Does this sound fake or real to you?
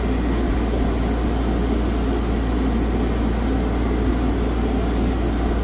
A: real